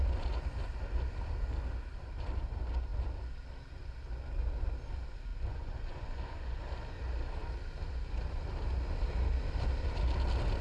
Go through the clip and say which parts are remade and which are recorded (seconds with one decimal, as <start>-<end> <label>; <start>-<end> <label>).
0.0-5.3 recorded; 5.3-6.6 remade; 6.6-10.6 recorded